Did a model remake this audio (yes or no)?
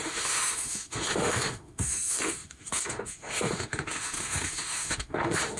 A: yes